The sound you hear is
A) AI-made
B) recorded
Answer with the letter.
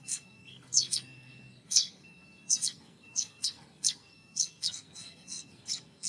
A